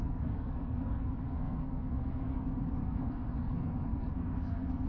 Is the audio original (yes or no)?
no